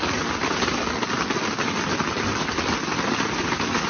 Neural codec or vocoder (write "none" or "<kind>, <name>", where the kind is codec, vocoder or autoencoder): none